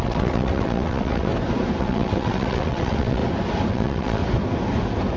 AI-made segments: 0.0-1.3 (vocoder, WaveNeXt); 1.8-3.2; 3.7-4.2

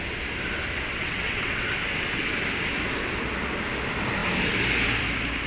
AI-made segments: 1.0-1.7 (vocoder, WaveNeXt)

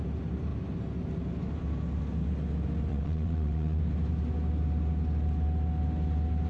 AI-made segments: 2.9-3.8 (vocoder, WaveNeXt)

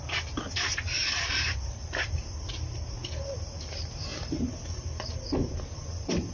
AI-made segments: none